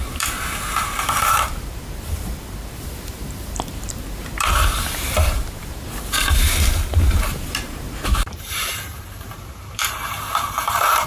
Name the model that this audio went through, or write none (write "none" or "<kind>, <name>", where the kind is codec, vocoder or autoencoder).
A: vocoder, BigVGAN v2